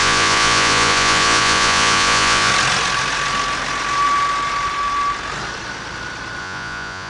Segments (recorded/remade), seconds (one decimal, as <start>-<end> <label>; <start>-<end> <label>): 0.0-2.5 remade; 2.5-6.4 recorded; 6.4-7.1 remade